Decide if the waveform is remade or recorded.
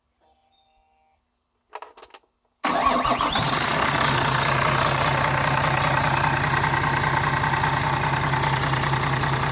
recorded